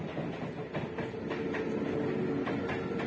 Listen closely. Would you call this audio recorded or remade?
recorded